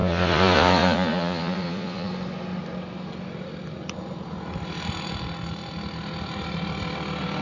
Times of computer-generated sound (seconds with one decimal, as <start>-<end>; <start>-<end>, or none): 0.0-2.1